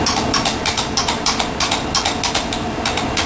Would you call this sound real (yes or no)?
yes